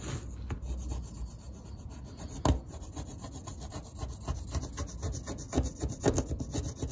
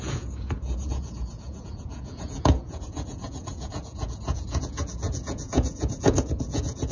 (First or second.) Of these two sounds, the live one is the first